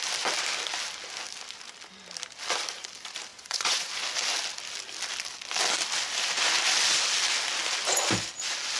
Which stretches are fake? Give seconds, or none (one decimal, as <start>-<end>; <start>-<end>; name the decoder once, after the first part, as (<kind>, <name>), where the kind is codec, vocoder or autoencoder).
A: 3.3-3.9 (vocoder, Vocos)